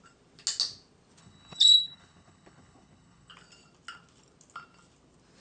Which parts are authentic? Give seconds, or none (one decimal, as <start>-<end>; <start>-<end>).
0.0-1.2; 3.3-5.4